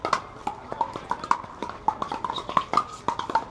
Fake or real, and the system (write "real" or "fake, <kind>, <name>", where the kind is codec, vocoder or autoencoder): real